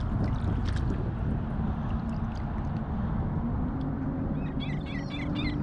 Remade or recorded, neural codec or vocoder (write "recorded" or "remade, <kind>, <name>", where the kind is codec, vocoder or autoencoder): recorded